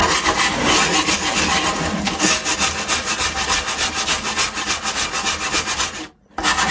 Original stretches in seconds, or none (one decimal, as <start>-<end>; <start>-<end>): 0.0-6.7